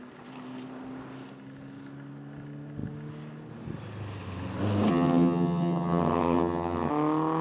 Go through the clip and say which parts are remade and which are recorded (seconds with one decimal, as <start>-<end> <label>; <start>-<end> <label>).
0.0-4.9 recorded; 4.9-6.9 remade; 6.9-7.4 recorded